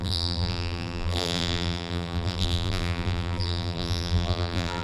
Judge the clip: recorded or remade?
remade